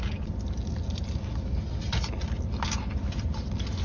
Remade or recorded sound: recorded